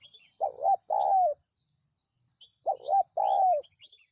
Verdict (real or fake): real